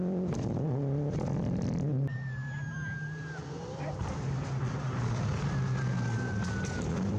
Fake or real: fake